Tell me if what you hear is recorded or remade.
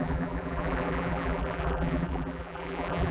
remade